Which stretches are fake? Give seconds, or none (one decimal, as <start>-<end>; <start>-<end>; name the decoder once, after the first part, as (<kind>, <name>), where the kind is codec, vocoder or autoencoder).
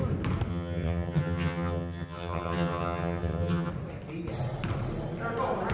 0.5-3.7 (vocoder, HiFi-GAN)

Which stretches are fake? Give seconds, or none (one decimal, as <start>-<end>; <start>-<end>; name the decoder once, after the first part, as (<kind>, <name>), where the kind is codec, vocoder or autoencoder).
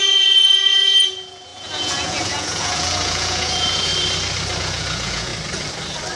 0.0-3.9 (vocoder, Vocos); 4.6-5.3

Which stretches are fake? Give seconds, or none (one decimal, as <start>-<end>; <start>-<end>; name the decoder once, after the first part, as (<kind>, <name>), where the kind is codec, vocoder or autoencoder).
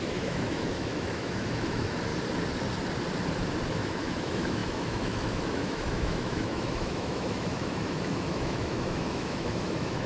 0.0-2.1 (autoencoder, DAC-VAE); 3.7-10.1